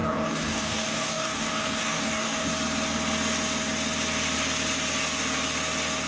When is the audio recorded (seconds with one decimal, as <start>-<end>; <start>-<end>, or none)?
2.5-6.1